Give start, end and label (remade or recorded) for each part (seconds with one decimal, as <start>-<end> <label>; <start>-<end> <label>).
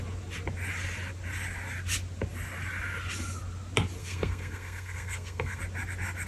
0.0-4.0 recorded; 4.0-5.6 remade; 5.6-6.3 recorded